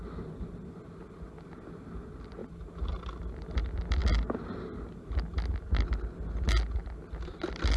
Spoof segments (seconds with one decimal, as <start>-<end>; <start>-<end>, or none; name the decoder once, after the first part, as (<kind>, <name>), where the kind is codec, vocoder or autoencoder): none